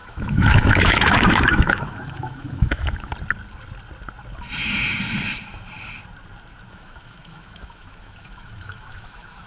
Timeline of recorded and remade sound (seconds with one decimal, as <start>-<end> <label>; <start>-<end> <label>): 0.0-3.1 remade; 3.1-6.7 recorded; 6.7-9.5 remade